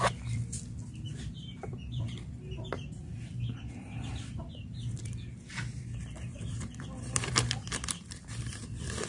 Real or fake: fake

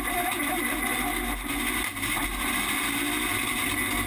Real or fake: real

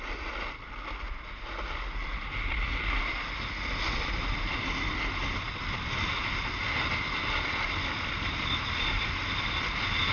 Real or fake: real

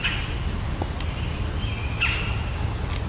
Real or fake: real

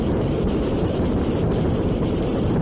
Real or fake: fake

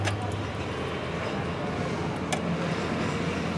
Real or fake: real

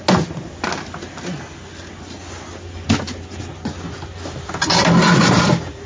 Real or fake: real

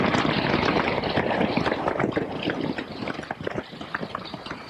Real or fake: real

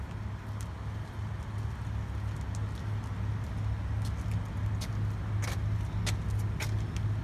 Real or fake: real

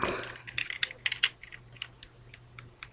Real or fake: real